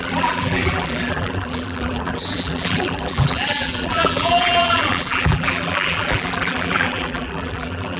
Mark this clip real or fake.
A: fake